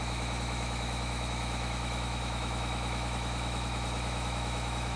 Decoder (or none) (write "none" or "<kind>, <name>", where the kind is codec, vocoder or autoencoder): autoencoder, DAC-VAE